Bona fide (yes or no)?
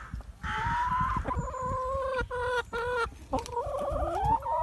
yes